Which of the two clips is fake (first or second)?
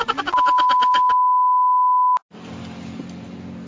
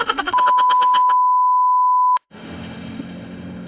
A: second